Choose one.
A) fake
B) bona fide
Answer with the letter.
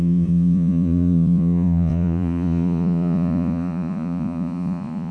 A